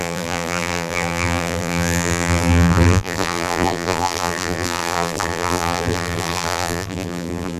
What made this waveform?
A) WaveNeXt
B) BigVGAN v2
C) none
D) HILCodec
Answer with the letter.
B